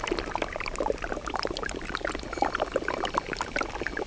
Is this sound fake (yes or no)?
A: no